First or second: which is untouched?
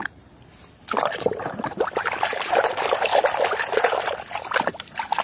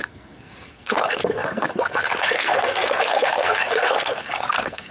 first